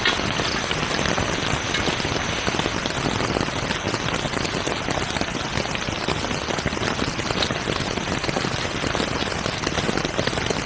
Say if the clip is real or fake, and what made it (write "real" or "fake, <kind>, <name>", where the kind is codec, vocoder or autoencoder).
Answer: real